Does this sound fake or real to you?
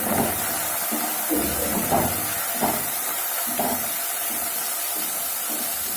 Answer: real